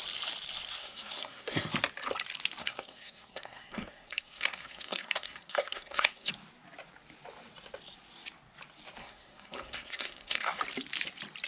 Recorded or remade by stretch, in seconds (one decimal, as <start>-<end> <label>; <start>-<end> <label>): 0.0-0.8 recorded; 0.8-1.7 remade; 1.7-2.6 recorded; 2.6-6.3 remade; 6.3-9.0 recorded; 9.0-10.6 remade; 10.6-11.5 recorded